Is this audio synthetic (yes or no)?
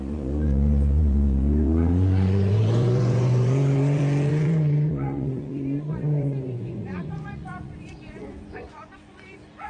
yes